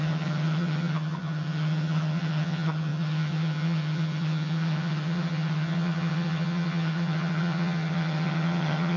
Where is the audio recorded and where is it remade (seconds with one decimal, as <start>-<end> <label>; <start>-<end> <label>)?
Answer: 0.0-9.0 remade